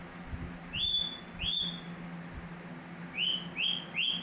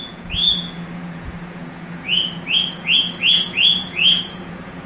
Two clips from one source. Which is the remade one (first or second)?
second